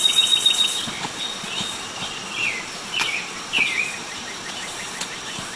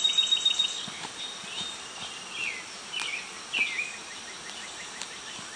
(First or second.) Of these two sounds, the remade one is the first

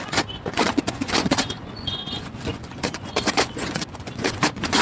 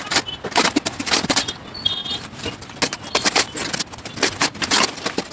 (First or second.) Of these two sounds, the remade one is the first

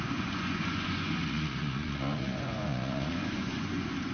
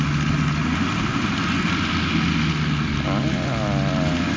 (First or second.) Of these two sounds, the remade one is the first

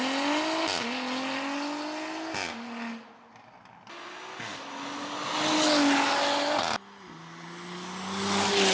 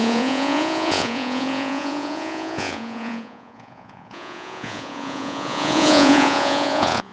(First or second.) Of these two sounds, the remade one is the second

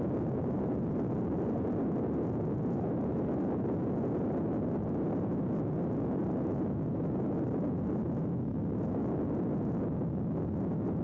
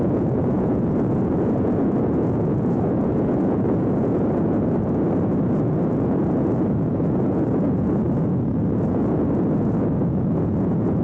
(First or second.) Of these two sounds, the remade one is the second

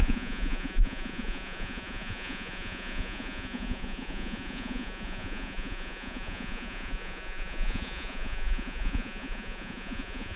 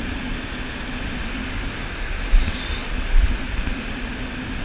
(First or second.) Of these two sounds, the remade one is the first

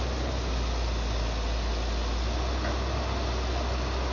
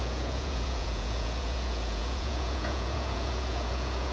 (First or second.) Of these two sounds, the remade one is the second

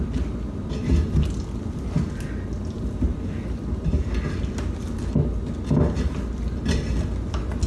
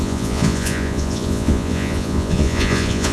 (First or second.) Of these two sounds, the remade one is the second